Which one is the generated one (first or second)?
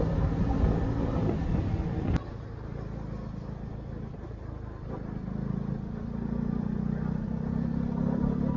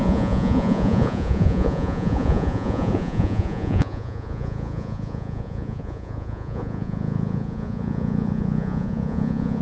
second